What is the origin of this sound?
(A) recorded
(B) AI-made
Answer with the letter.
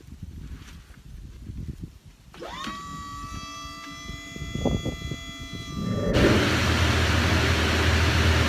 A